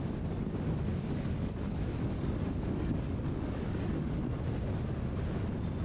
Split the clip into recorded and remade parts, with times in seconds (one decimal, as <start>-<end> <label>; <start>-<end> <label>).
0.0-0.9 recorded; 0.9-4.4 remade; 4.4-5.8 recorded

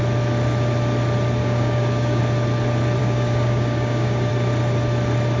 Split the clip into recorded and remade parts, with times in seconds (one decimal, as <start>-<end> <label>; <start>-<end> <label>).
0.0-1.4 recorded; 1.4-2.2 remade; 2.2-3.0 recorded; 3.0-4.3 remade; 4.3-5.4 recorded

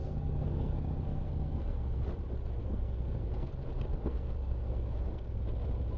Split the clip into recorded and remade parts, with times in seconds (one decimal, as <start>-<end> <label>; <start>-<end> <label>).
0.0-2.0 remade; 2.0-2.6 recorded; 2.6-3.5 remade; 3.5-3.9 recorded; 3.9-5.4 remade; 5.4-6.0 recorded

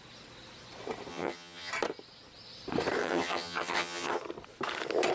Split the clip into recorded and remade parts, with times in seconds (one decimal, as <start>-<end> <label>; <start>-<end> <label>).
0.0-1.1 recorded; 1.1-1.7 remade; 1.7-3.0 recorded; 3.0-4.2 remade; 4.2-5.1 recorded

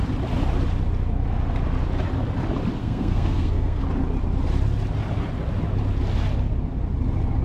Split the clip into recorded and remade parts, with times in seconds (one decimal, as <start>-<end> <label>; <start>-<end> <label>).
0.0-2.8 recorded; 2.8-3.8 remade; 3.8-7.4 recorded

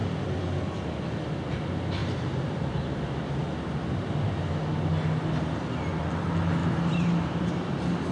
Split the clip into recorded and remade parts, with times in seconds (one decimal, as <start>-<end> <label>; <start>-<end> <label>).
0.0-2.0 recorded; 2.0-3.0 remade; 3.0-6.6 recorded; 6.6-7.5 remade; 7.5-8.1 recorded

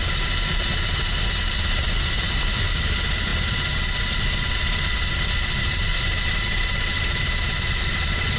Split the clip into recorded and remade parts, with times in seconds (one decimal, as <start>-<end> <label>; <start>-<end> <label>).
0.0-8.4 recorded